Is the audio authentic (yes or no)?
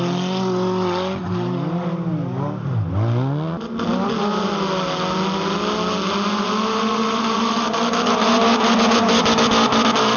yes